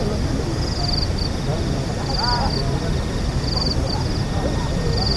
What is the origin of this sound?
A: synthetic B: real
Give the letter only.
B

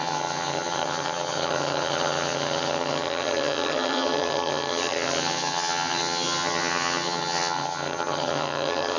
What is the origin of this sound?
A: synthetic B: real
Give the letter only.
A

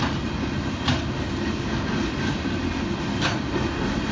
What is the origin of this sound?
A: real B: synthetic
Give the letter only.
A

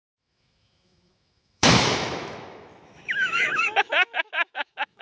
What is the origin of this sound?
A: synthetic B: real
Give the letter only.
A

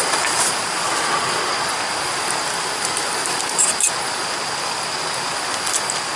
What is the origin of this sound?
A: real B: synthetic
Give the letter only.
A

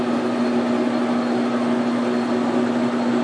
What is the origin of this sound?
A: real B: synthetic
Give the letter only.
A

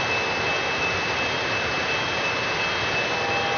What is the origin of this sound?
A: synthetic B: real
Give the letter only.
B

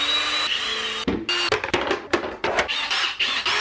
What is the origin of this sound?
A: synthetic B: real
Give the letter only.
B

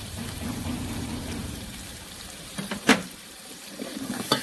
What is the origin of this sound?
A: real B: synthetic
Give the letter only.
B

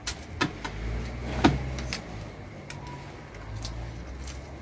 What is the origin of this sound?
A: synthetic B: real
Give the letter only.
B